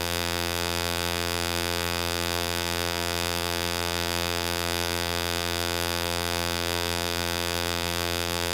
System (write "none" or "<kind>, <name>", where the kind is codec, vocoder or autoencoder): vocoder, BigVGAN v2